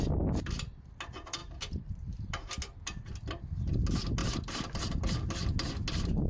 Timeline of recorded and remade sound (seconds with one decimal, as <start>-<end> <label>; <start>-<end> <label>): 0.0-1.4 recorded; 1.4-2.5 remade; 2.5-4.2 recorded; 4.2-5.3 remade; 5.3-6.3 recorded